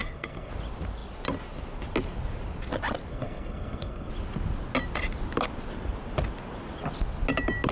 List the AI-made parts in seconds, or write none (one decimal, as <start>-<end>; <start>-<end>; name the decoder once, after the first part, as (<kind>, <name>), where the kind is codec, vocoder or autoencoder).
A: 0.0-0.5 (codec, SNAC); 3.1-4.1